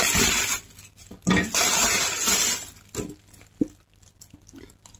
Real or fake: real